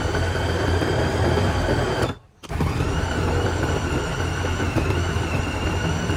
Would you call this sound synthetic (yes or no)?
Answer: yes